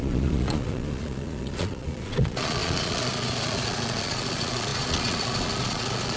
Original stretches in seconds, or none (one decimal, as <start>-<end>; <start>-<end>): none

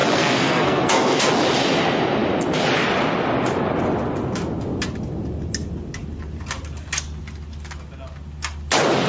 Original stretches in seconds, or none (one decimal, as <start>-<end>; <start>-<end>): 1.3-9.1

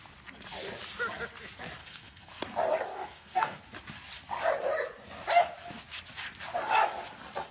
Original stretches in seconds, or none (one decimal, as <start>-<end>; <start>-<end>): 0.0-1.8; 2.4-2.9; 3.6-7.5

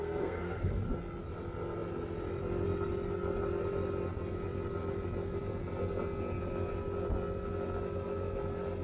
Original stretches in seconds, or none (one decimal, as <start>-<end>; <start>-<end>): 0.7-8.8

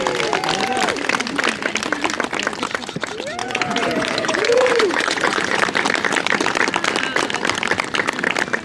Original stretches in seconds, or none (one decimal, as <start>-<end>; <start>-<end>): 0.0-3.4; 5.6-8.6